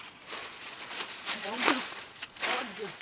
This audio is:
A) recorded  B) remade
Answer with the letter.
B